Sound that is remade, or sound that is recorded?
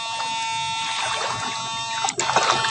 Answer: recorded